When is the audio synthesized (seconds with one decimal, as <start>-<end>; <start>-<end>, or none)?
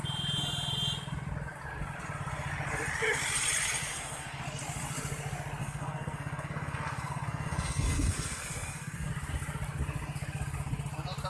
3.8-4.4; 5.6-9.1